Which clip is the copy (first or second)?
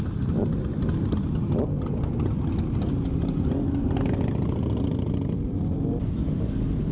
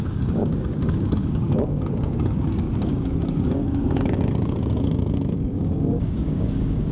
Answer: second